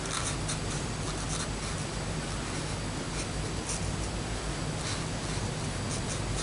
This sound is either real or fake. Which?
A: real